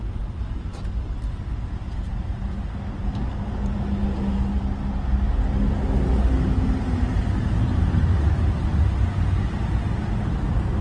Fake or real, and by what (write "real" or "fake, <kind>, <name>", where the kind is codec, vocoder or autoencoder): real